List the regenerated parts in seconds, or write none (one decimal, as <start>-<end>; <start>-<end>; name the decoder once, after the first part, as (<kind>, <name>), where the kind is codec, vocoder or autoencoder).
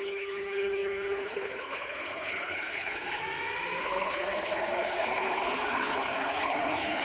0.0-3.2 (codec, HILCodec); 3.8-7.0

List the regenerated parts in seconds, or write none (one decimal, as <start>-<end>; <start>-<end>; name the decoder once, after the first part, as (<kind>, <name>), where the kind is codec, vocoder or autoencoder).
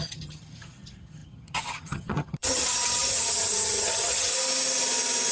0.0-4.3 (vocoder, HiFi-GAN)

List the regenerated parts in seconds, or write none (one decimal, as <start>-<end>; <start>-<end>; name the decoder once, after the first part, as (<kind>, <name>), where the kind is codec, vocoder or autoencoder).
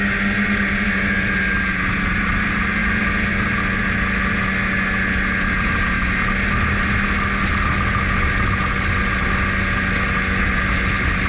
none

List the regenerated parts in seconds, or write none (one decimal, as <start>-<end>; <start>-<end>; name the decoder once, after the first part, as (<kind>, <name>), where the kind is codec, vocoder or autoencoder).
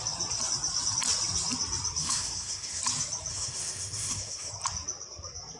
2.0-2.8 (autoencoder, DAC-VAE); 3.3-4.5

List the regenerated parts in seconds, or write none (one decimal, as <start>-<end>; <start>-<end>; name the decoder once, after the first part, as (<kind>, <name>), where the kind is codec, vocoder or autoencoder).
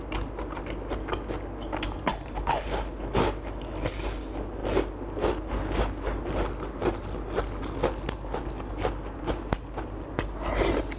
none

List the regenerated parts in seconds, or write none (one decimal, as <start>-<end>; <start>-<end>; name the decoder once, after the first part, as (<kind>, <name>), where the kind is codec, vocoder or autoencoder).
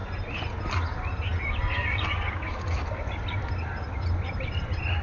none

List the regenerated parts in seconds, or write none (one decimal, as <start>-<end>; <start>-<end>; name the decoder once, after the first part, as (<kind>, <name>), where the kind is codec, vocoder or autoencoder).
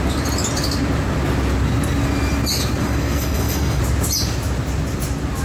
2.8-3.8 (codec, SNAC)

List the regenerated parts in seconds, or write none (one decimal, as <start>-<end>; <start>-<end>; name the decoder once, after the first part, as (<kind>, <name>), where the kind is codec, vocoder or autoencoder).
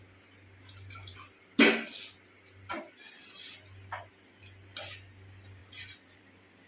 none